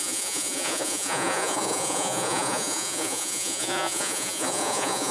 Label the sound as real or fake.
fake